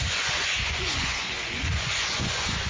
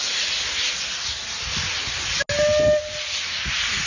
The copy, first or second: first